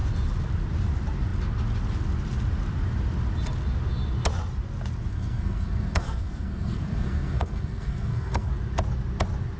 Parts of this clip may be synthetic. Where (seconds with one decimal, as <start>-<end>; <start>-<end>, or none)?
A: 5.1-8.5